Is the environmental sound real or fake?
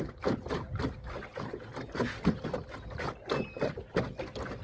real